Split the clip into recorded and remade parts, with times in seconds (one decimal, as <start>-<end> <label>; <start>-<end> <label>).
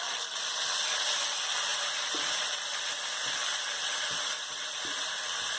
0.0-5.6 recorded